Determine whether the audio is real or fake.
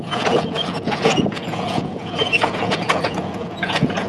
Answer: fake